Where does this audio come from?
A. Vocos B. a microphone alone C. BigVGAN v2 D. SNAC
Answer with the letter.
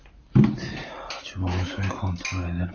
B